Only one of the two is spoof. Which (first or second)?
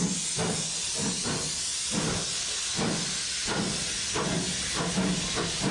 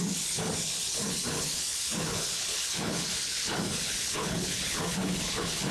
second